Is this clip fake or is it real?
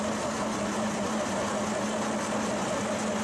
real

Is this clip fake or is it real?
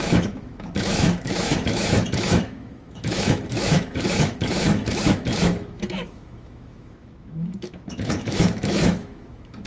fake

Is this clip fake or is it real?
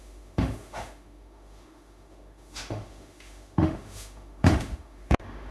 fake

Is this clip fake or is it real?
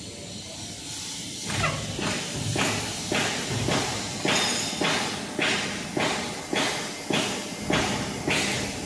real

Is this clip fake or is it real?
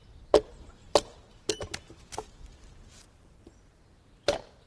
real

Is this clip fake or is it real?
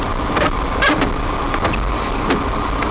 real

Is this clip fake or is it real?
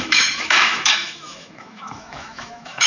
fake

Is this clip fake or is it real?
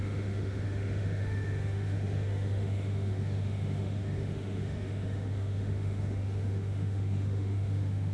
fake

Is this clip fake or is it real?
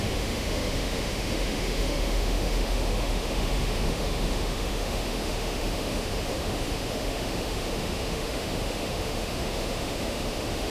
fake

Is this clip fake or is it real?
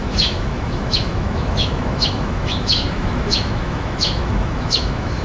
fake